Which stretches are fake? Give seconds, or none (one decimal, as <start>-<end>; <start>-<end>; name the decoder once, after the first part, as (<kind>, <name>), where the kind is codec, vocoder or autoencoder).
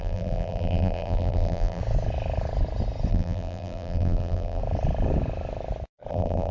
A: 0.0-1.8 (vocoder, BigVGAN v2); 3.1-4.6; 6.1-6.5